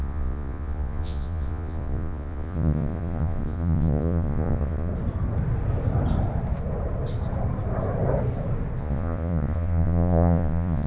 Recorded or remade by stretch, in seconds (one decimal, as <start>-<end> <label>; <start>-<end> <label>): 0.0-4.9 remade; 4.9-8.8 recorded; 8.8-10.9 remade